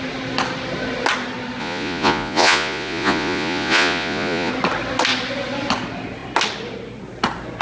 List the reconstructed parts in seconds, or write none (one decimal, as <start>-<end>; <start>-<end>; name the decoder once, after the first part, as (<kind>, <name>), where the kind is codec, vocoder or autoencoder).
1.6-4.5 (vocoder, Vocos)